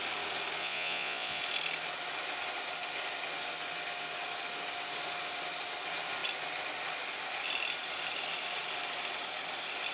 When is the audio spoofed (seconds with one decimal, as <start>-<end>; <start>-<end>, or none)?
0.6-1.4

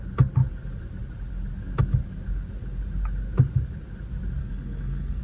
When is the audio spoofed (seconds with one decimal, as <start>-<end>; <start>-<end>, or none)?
4.4-5.2

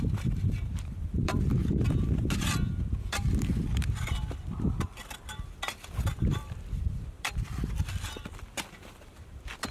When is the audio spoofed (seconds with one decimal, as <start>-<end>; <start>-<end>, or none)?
0.0-9.7